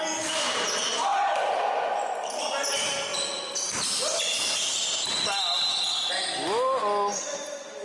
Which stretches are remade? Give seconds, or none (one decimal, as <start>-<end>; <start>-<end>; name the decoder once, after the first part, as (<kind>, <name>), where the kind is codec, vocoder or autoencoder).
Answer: none